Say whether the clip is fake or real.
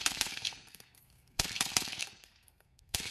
fake